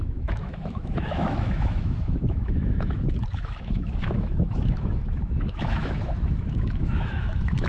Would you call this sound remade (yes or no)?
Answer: yes